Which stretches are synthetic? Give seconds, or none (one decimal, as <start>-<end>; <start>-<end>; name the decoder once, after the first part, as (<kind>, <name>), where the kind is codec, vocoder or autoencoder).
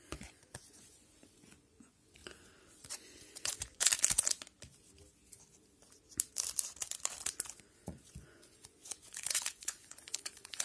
0.0-2.2 (vocoder, Vocos); 2.9-3.9; 7.8-10.6